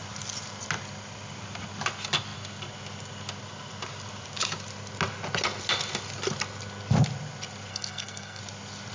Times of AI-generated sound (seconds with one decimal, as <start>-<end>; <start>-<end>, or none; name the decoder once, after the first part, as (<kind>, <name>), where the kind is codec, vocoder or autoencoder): 7.7-8.4 (codec, SNAC)